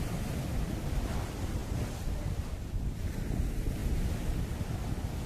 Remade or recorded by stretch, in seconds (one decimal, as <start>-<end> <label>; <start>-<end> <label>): 0.0-5.3 recorded